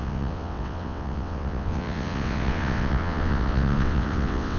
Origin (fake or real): fake